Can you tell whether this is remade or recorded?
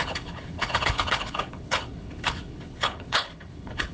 remade